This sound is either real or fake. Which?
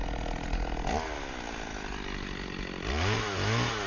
real